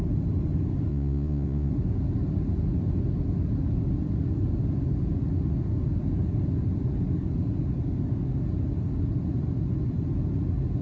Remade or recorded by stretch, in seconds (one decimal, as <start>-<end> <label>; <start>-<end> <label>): 0.0-0.9 recorded; 0.9-1.7 remade; 1.7-10.8 recorded